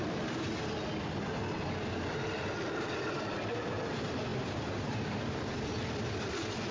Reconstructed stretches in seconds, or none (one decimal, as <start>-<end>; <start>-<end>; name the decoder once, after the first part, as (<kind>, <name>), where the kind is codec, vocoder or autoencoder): 4.3-5.6 (vocoder, BigVGAN v2)